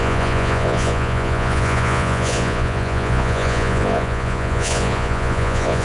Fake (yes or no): yes